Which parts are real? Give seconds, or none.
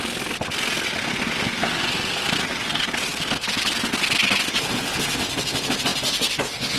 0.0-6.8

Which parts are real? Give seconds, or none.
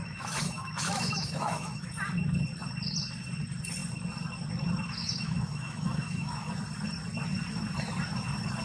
1.9-5.0; 6.5-8.6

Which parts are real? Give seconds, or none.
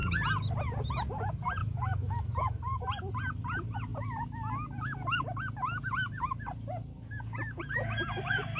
0.0-1.6; 2.8-8.6